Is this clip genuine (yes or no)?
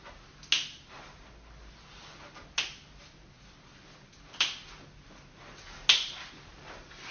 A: yes